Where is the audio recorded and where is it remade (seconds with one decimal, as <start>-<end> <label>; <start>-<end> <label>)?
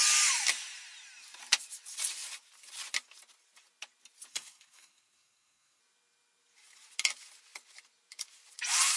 0.0-4.3 recorded; 4.3-5.8 remade; 5.8-9.0 recorded